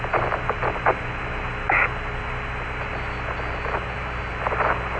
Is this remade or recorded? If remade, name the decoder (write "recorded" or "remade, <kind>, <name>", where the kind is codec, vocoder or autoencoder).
recorded